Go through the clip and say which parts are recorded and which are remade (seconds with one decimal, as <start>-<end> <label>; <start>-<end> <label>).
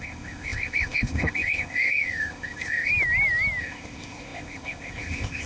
0.0-2.9 remade; 2.9-3.6 recorded; 3.6-5.5 remade